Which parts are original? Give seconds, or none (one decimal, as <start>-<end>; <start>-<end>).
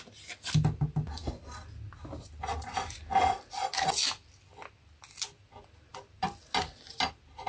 0.0-7.5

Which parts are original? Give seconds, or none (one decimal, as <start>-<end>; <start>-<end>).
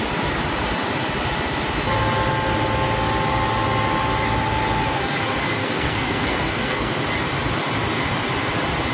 0.0-5.6; 6.9-8.9